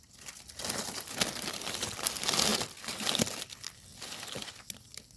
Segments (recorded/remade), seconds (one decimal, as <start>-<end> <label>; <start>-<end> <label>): 0.0-5.2 recorded